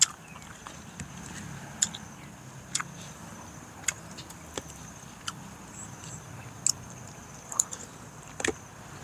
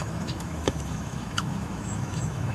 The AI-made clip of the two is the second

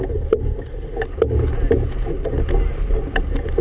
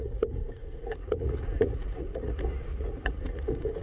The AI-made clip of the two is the second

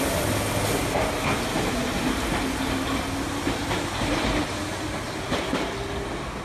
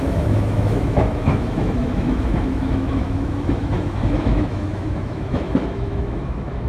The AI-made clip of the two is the second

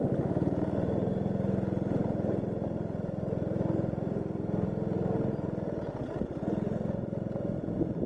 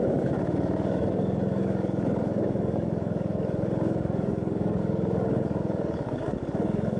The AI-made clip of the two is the second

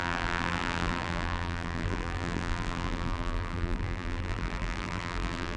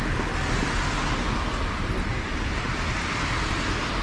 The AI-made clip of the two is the first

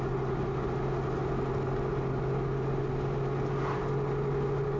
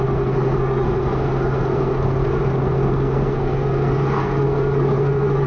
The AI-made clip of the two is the second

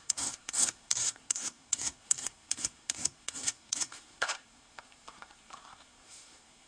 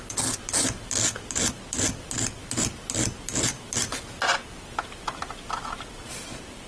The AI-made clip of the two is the first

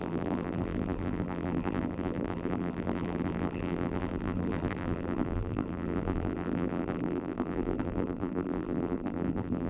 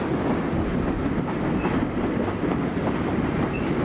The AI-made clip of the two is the first